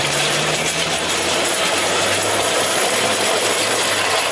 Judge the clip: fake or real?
fake